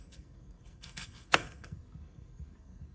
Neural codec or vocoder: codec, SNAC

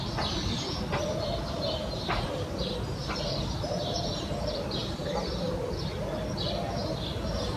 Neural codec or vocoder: none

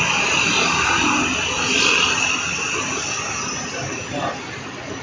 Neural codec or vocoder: none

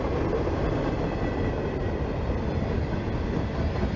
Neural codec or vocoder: none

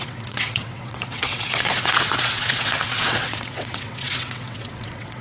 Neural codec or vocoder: vocoder, WaveNeXt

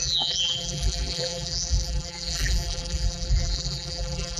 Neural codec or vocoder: vocoder, BigVGAN v2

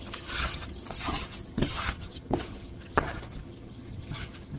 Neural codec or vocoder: vocoder, HiFi-GAN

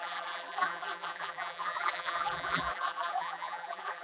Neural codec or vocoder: vocoder, BigVGAN v2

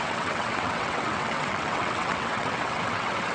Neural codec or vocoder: vocoder, WaveNeXt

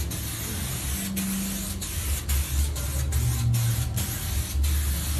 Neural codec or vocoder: none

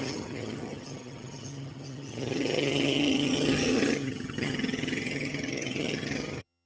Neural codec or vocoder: vocoder, HiFi-GAN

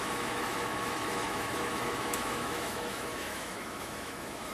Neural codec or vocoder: autoencoder, DAC-VAE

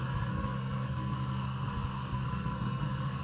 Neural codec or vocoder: codec, SNAC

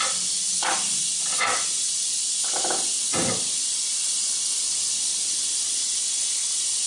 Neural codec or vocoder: none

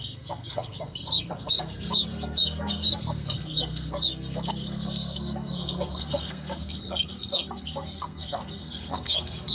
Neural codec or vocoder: codec, SNAC